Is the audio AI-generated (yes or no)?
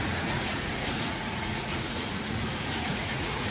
yes